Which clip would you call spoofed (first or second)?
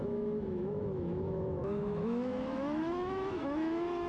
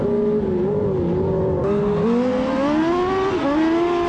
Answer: first